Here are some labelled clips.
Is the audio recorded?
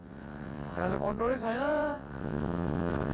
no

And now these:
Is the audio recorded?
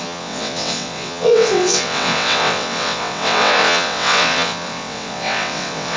no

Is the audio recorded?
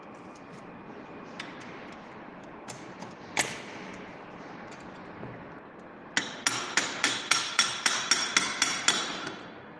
yes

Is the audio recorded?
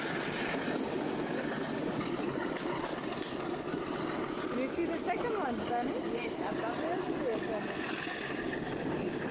yes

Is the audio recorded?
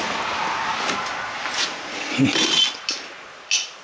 yes